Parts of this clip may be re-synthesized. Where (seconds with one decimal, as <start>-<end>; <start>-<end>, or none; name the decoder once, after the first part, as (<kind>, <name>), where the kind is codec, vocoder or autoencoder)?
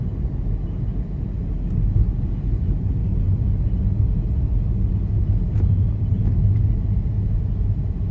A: none